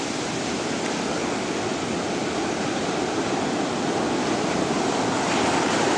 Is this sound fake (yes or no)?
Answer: no